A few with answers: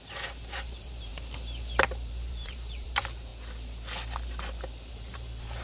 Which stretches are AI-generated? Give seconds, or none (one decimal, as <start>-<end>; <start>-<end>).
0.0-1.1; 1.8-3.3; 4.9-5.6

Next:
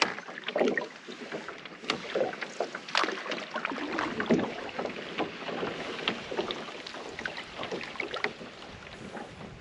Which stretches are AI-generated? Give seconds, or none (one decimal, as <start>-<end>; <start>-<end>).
none

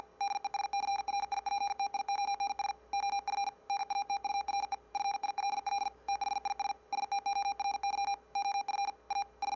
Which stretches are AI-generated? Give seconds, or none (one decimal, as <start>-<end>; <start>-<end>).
0.9-2.4; 3.8-6.2